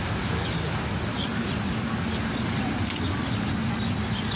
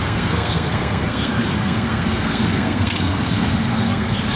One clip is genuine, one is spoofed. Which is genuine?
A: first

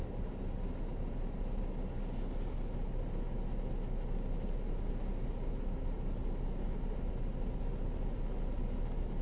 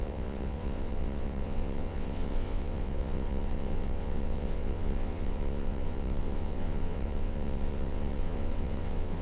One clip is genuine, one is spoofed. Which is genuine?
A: first